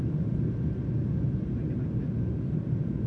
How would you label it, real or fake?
real